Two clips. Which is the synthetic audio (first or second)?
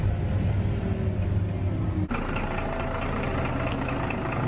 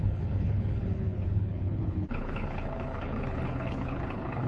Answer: second